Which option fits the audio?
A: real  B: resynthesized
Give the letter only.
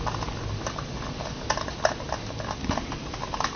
A